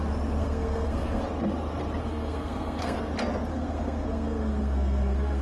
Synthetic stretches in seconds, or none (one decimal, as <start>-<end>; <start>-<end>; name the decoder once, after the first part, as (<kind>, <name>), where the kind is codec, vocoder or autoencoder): 0.4-1.2 (codec, SNAC); 2.0-3.1; 3.5-5.4